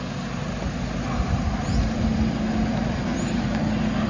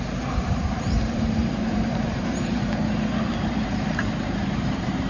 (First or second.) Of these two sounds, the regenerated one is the second